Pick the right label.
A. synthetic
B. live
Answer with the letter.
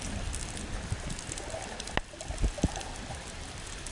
B